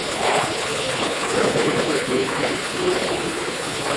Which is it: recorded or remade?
remade